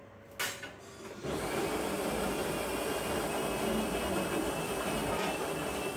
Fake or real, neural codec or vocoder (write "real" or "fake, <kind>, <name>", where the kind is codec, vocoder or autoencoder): real